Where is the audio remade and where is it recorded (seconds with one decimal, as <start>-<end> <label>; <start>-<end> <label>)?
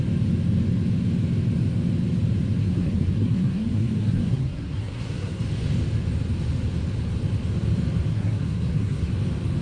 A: 0.0-2.6 recorded; 2.6-5.4 remade; 5.4-8.1 recorded; 8.1-9.1 remade; 9.1-9.6 recorded